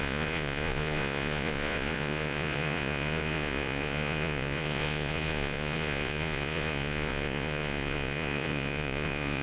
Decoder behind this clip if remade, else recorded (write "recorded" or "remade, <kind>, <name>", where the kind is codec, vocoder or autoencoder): remade, vocoder, Vocos